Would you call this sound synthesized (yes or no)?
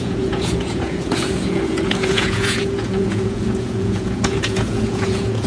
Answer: yes